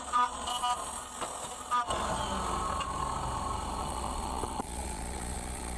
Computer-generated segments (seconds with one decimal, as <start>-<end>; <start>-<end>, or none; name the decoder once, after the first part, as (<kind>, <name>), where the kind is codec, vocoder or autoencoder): 0.0-0.5 (vocoder, Vocos); 3.8-5.8